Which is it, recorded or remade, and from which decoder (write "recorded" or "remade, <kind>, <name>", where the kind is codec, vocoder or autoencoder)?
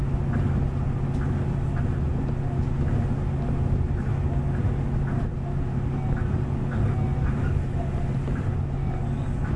recorded